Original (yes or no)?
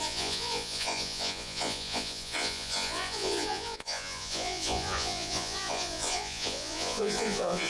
no